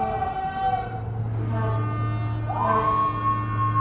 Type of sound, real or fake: real